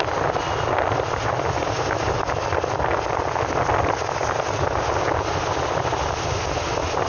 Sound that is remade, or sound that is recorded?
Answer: recorded